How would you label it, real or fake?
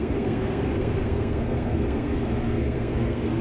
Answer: fake